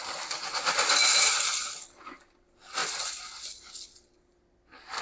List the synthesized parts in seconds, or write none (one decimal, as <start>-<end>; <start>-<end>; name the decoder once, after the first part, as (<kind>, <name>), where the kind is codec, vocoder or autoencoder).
1.1-1.7 (vocoder, BigVGAN v2)